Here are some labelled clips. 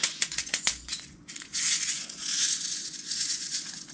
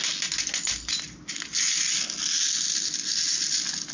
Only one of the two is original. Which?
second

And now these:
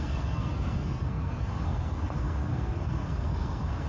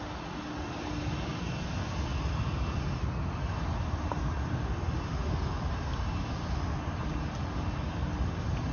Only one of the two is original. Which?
second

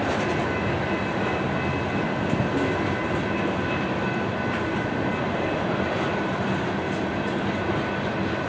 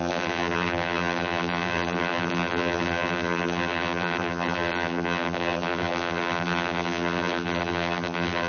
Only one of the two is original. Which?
first